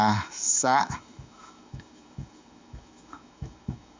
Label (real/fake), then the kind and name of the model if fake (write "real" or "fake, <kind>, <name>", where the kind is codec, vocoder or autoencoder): fake, autoencoder, DAC-VAE